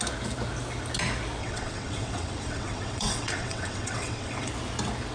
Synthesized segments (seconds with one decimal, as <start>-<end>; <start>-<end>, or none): 1.4-4.5